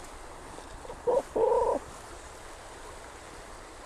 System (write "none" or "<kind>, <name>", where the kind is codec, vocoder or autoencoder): none